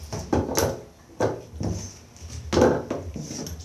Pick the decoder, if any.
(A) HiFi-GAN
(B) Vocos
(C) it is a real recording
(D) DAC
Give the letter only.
C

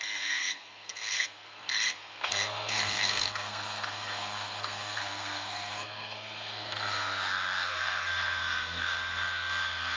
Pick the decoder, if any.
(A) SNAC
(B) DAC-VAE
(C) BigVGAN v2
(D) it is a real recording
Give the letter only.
A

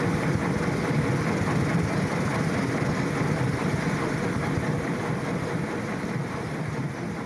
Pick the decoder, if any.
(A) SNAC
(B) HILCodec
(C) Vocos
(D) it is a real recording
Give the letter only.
D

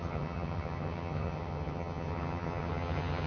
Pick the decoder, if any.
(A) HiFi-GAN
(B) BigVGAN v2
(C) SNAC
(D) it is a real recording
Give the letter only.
A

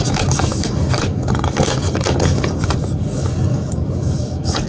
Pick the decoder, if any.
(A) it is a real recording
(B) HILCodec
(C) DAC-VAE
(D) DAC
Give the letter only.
D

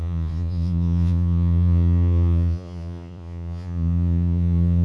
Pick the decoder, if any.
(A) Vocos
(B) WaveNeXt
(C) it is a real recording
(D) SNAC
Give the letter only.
A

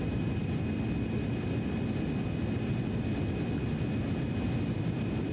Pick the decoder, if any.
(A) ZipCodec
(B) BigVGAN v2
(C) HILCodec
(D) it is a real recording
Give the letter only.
D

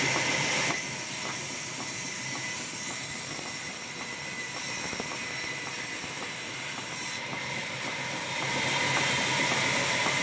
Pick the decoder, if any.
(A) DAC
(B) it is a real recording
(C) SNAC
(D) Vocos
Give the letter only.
B